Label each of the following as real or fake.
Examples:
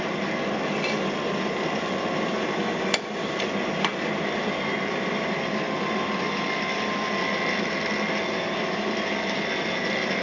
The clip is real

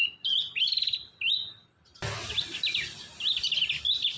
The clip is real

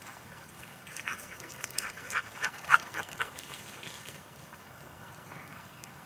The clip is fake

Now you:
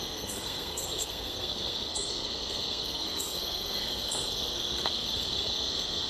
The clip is fake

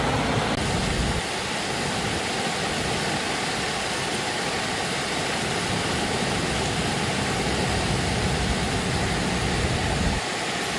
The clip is real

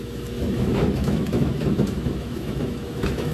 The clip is fake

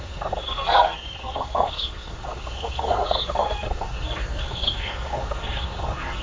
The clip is fake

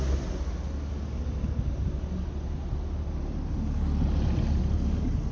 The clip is real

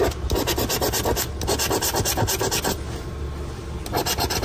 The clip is real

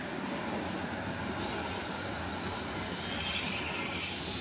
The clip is real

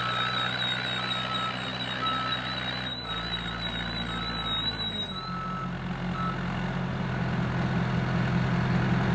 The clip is real